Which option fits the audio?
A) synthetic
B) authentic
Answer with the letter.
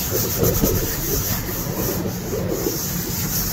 B